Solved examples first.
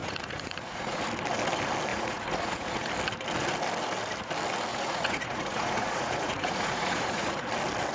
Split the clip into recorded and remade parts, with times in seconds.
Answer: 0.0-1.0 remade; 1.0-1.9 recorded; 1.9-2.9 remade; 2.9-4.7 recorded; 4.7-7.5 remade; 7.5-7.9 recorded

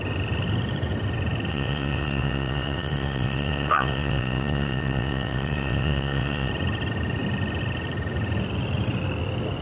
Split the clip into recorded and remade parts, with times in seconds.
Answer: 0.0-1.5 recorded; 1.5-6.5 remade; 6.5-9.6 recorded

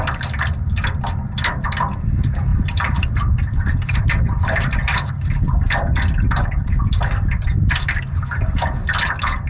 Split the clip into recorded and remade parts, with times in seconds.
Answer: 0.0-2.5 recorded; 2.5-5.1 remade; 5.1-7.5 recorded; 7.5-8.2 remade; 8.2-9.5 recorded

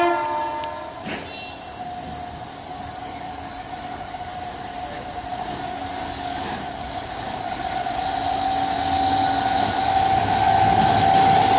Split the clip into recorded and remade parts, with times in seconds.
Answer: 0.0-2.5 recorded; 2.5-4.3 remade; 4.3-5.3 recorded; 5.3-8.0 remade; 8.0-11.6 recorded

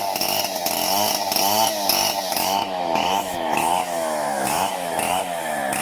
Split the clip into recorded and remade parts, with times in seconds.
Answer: 0.0-2.3 recorded; 2.3-5.8 remade

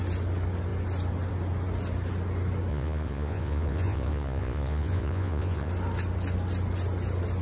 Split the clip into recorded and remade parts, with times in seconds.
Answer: 0.0-2.7 recorded; 2.7-5.7 remade; 5.7-7.4 recorded

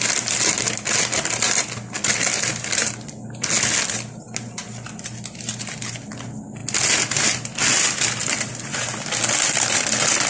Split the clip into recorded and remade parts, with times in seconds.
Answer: 0.0-10.3 recorded